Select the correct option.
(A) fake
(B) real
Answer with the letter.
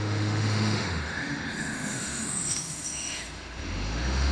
A